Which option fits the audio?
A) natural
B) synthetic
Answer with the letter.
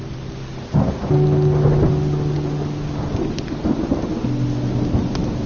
A